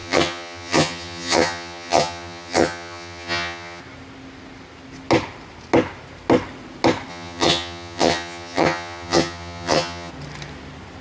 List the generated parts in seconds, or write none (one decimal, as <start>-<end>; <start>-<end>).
0.0-3.8; 7.1-10.1